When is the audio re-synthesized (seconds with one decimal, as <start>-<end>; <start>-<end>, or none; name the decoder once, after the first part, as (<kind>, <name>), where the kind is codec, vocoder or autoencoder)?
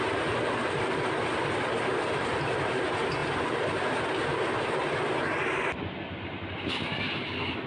none